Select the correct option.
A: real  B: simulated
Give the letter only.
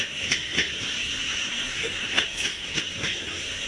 B